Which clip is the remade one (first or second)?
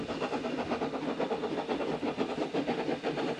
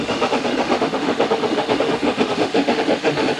second